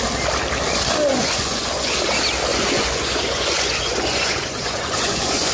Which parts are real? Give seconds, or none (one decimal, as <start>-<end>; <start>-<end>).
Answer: 0.0-1.1; 1.9-2.5